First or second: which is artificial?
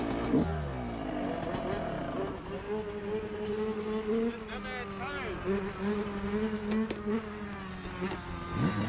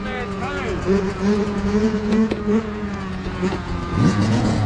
second